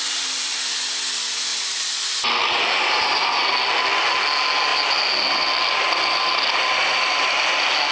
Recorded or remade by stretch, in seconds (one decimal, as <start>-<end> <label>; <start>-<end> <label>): 0.0-7.9 recorded